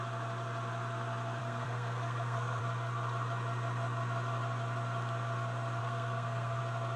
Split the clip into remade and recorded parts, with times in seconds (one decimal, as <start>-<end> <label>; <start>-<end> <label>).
0.0-1.4 recorded; 1.4-2.6 remade; 2.6-5.8 recorded; 5.8-6.6 remade; 6.6-7.0 recorded